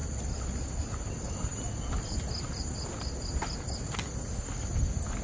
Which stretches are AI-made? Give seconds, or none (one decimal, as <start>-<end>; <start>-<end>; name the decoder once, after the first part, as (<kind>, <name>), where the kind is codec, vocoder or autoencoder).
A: none

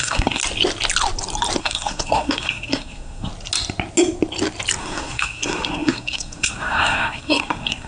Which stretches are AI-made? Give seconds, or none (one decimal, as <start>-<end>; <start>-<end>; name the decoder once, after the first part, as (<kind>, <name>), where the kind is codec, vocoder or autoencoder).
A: 0.0-0.4 (codec, SNAC); 1.6-3.3; 4.8-7.9